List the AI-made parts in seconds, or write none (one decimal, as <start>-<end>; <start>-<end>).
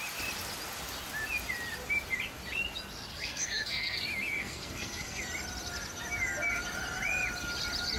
3.1-4.0; 4.4-5.2